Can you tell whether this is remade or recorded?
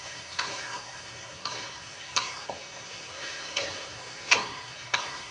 remade